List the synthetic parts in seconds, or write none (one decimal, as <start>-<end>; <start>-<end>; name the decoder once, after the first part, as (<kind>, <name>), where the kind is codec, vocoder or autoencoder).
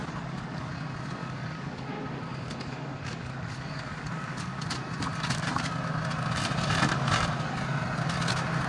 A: 0.0-0.7 (codec, DAC); 1.2-1.9; 2.3-4.7